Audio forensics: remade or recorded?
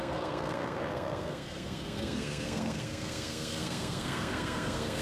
remade